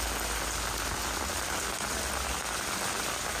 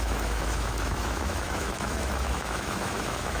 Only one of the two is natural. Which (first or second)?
first